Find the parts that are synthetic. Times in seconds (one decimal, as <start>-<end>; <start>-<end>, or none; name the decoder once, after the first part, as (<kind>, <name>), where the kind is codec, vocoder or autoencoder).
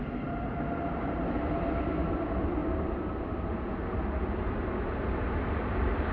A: none